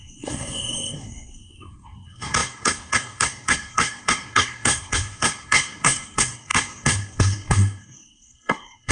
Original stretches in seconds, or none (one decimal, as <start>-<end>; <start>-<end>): none